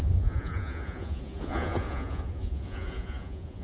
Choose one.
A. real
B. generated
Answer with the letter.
B